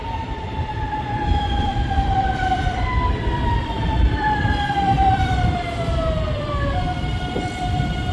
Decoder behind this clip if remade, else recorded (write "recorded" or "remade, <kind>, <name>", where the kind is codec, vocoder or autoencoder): remade, vocoder, BigVGAN v2